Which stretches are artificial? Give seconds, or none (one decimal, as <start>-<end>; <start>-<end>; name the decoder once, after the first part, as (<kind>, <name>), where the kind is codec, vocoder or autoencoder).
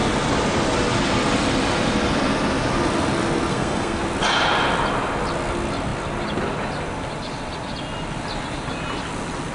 3.5-4.0 (codec, SNAC)